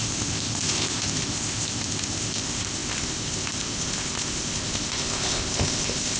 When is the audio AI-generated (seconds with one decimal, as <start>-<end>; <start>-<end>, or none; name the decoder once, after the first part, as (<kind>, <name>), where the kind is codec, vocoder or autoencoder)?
0.0-6.2 (codec, ZipCodec)